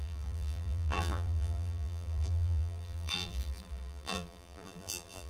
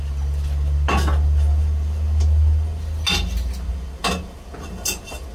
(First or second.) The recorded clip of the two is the second